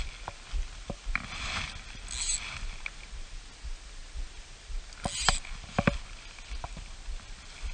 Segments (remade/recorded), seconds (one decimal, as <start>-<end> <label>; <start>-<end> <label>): 0.0-7.7 recorded